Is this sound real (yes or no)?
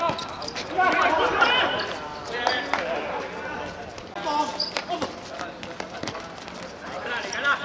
yes